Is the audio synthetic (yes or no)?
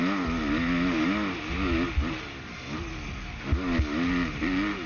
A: no